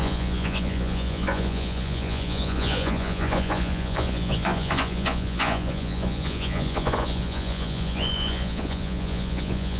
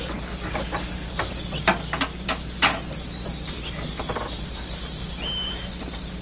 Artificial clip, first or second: first